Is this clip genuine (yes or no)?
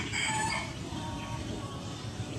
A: no